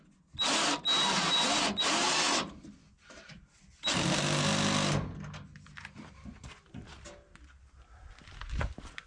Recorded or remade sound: recorded